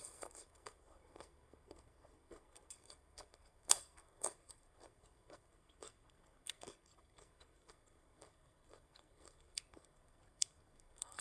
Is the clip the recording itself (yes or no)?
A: no